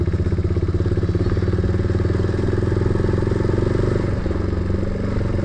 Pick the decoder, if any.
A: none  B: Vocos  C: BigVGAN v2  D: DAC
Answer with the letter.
A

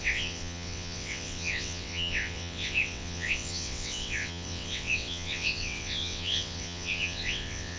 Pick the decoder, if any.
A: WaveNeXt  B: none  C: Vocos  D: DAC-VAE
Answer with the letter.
A